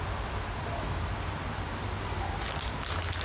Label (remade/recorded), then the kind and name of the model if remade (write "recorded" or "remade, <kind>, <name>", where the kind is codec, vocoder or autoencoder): recorded